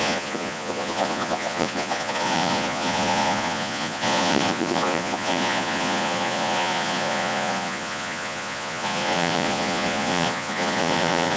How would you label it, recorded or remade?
remade